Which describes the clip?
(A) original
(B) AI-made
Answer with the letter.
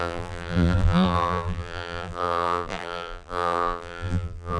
B